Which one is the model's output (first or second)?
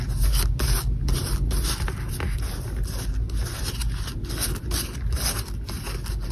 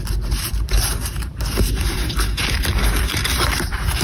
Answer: second